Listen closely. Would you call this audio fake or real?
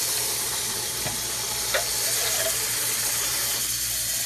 real